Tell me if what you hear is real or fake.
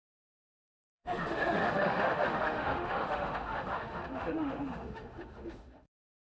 fake